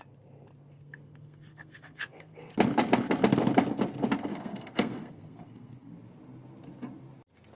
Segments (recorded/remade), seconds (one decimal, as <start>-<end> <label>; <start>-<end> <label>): 0.0-0.7 recorded; 0.7-2.5 remade; 2.5-4.3 recorded; 4.3-5.9 remade; 5.9-7.5 recorded